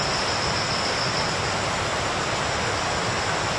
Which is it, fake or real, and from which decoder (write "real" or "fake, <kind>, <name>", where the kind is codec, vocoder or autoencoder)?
real